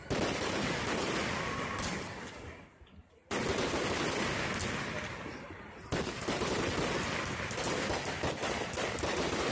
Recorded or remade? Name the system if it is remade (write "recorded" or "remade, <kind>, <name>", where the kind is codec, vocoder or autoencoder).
recorded